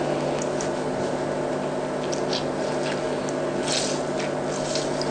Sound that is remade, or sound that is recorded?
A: recorded